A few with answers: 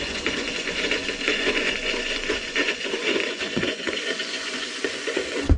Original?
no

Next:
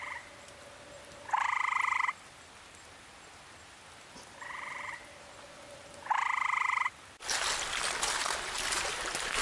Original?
yes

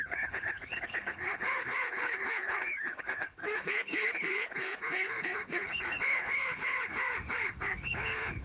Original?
no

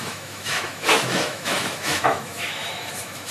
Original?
no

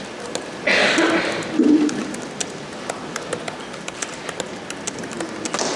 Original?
yes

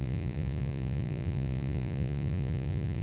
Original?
no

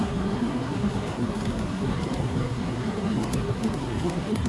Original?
no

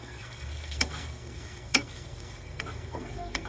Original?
no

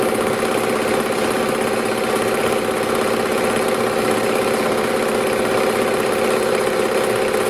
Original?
yes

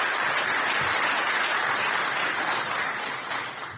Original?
yes